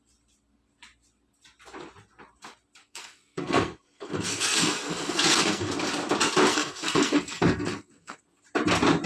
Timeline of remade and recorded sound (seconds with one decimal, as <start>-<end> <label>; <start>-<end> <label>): 0.0-2.8 recorded; 2.8-5.7 remade; 5.7-6.5 recorded; 6.5-8.2 remade; 8.2-9.1 recorded